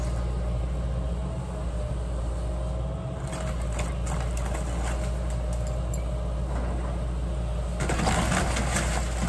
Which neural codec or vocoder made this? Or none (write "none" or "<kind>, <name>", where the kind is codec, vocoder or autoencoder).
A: none